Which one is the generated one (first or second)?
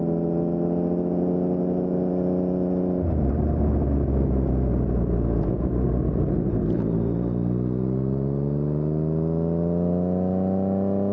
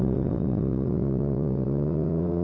second